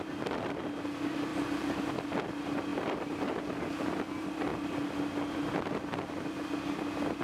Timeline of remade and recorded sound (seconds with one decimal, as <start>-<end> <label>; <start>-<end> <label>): 0.0-1.3 recorded; 1.3-1.9 remade; 1.9-2.7 recorded; 2.7-3.5 remade; 3.5-7.2 recorded